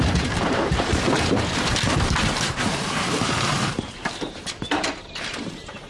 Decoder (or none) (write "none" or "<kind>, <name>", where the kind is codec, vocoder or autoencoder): vocoder, BigVGAN v2